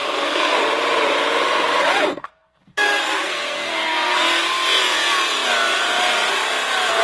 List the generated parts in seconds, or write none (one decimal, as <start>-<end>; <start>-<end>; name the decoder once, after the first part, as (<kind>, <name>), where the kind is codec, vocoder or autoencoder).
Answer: 0.0-0.6 (codec, SNAC); 2.1-4.2